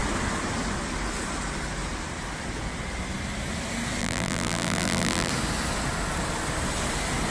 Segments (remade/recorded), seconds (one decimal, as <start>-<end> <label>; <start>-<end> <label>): 0.0-4.0 recorded; 4.0-5.3 remade; 5.3-7.3 recorded